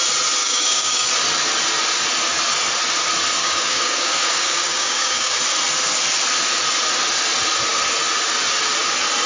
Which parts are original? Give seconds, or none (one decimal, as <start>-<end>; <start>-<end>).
0.0-0.4; 1.1-3.4; 5.4-9.3